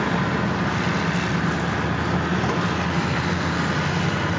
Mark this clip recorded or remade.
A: recorded